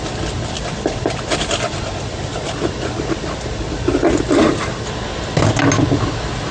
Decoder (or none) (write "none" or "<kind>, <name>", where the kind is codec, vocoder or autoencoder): none